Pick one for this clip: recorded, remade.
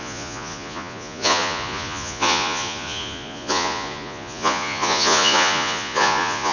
remade